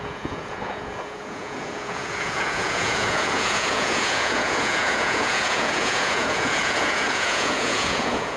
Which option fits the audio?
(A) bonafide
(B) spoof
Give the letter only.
B